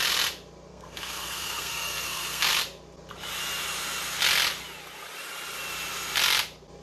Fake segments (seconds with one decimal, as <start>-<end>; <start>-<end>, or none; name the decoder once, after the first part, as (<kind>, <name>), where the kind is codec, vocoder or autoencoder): 0.7-2.5 (codec, SNAC)